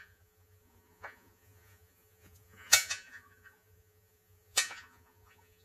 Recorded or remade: remade